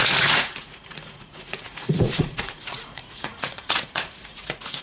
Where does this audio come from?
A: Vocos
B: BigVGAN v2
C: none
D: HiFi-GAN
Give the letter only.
A